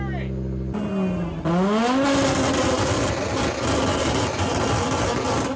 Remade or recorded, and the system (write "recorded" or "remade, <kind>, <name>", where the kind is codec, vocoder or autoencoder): recorded